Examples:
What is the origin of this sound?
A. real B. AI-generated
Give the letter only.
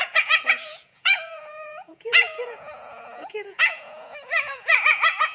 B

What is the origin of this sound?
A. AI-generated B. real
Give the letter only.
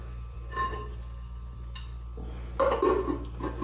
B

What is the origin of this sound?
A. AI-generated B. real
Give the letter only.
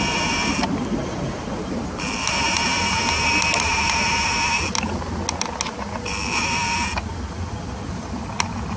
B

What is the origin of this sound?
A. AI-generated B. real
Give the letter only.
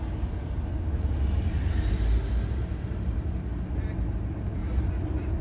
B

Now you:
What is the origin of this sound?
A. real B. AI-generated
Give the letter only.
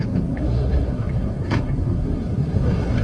B